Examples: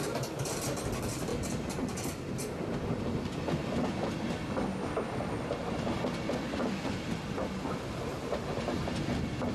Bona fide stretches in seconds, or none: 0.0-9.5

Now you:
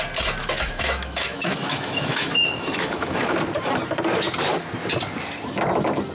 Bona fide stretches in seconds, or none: 0.0-0.4; 3.3-6.1

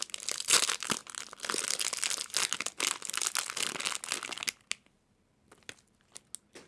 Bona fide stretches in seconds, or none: 0.0-6.7

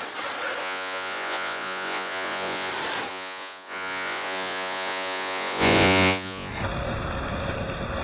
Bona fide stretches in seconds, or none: 0.0-0.6; 2.7-3.1; 6.5-8.0

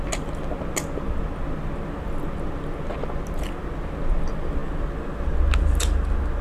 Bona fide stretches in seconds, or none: 0.0-6.4

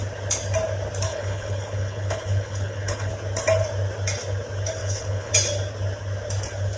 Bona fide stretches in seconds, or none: 0.0-1.1; 3.1-4.8; 5.3-6.8